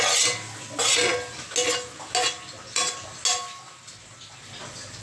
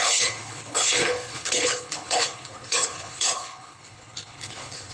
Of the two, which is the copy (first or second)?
second